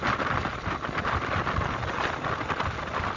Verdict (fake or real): real